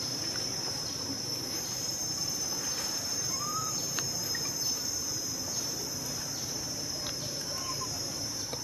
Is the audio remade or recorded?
remade